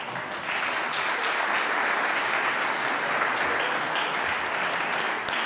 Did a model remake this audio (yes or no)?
no